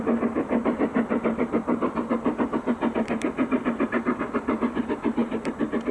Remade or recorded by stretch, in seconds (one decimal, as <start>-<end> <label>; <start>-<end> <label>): 0.0-5.9 recorded